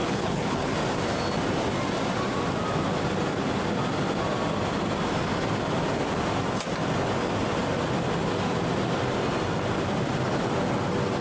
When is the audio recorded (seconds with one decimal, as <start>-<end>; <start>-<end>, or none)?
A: 0.7-11.2